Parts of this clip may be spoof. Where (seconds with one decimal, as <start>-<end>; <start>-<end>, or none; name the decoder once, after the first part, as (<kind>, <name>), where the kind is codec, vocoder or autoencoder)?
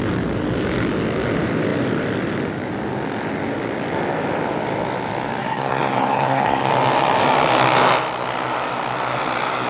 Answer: 5.4-6.7 (codec, SNAC)